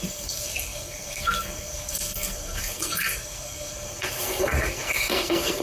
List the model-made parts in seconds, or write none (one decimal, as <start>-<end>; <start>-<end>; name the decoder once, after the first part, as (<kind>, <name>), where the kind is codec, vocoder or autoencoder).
0.0-5.6 (codec, SNAC)